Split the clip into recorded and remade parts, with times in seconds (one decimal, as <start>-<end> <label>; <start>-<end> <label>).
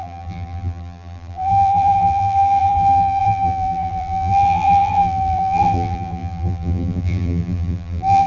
0.0-8.3 remade